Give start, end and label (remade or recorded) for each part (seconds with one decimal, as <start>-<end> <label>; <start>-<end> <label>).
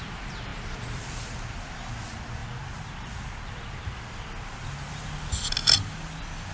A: 0.0-0.5 recorded; 0.5-1.9 remade; 1.9-6.5 recorded